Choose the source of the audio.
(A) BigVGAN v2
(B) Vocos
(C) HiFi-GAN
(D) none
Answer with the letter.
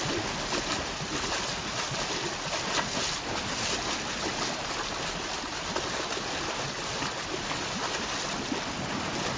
D